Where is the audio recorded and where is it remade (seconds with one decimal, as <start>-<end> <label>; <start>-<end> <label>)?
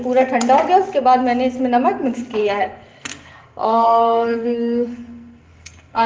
0.0-2.4 recorded; 2.4-6.1 remade